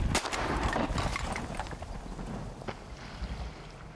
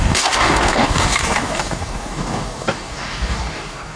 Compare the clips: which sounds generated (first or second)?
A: second